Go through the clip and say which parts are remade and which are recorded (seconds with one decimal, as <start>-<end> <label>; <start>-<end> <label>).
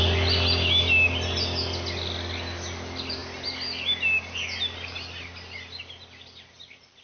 0.0-7.0 recorded